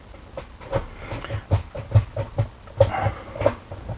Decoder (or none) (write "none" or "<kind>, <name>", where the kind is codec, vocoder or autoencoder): none